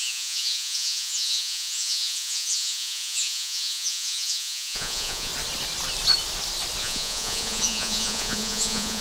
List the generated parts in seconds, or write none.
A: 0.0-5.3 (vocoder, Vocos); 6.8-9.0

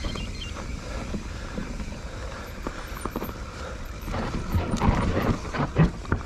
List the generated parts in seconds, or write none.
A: 0.0-6.3 (vocoder, BigVGAN v2)

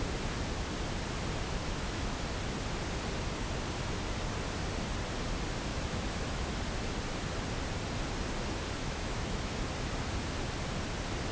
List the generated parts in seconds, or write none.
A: 1.6-2.2 (autoencoder, DAC-VAE); 5.7-6.6; 8.8-9.5

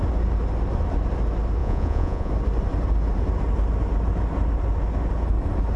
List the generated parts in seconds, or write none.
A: 1.6-2.3 (vocoder, Vocos)

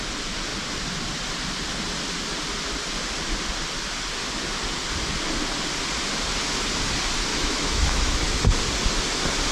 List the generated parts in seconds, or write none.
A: 7.3-8.2 (autoencoder, DAC-VAE)

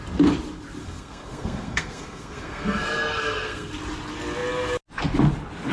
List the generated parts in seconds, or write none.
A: 0.8-3.7 (codec, SNAC)